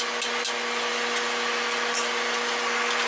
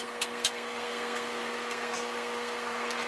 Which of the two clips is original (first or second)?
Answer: first